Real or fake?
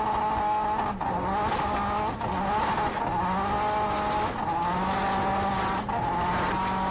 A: real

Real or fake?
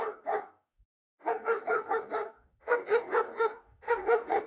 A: fake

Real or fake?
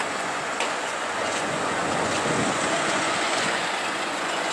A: fake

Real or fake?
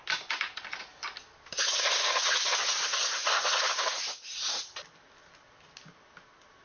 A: real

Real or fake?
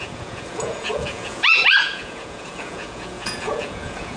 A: fake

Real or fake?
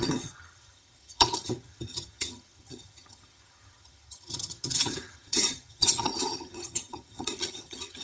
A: fake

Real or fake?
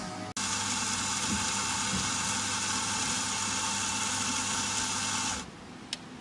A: real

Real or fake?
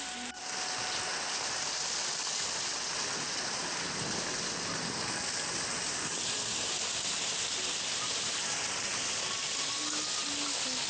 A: real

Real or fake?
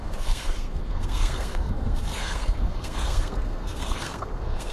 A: fake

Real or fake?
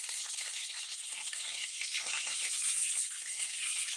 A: fake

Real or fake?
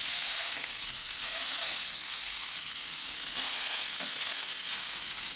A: fake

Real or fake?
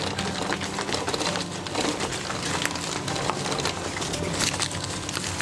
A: real